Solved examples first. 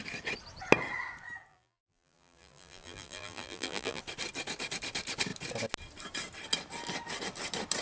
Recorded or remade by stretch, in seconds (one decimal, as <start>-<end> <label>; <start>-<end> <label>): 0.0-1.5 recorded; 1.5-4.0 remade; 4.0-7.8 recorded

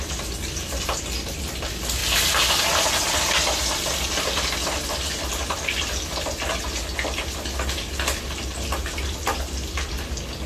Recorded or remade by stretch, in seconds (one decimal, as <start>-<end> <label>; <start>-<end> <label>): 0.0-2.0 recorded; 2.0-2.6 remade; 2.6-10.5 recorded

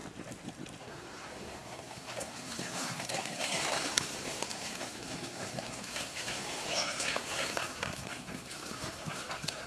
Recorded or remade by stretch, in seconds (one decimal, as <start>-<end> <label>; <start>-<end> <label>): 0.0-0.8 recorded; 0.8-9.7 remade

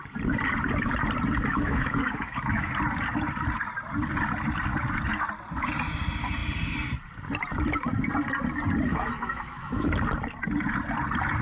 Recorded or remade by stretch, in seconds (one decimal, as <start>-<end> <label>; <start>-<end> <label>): 0.0-1.5 recorded; 1.5-2.7 remade; 2.7-8.9 recorded; 8.9-9.9 remade; 9.9-11.4 recorded

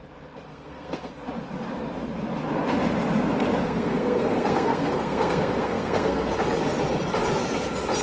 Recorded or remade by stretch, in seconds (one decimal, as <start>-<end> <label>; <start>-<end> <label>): 0.0-0.5 recorded; 0.5-1.1 remade; 1.1-3.6 recorded; 3.6-6.3 remade; 6.3-8.0 recorded

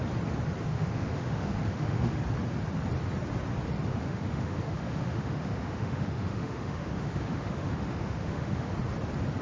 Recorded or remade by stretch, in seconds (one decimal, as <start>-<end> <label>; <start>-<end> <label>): 0.0-0.7 recorded; 0.7-2.2 remade; 2.2-3.9 recorded; 3.9-8.7 remade; 8.7-9.4 recorded